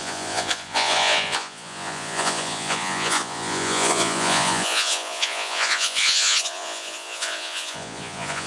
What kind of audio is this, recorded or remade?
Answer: remade